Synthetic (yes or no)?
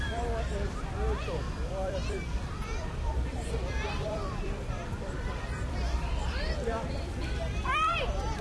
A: yes